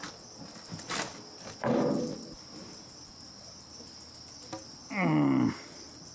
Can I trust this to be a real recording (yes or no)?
yes